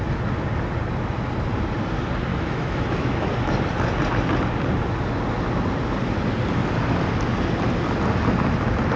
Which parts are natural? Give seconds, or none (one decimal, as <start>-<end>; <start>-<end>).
0.0-2.3; 3.3-9.0